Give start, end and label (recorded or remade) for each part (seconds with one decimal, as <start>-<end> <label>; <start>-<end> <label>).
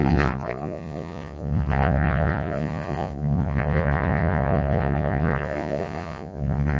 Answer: 0.0-6.8 remade